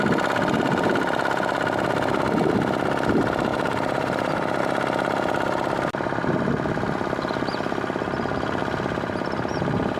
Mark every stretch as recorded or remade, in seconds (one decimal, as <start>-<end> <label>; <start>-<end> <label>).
0.0-3.5 recorded; 3.5-4.6 remade; 4.6-10.0 recorded

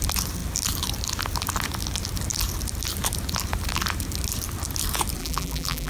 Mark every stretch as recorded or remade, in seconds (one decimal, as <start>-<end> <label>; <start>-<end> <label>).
0.0-5.2 recorded; 5.2-5.9 remade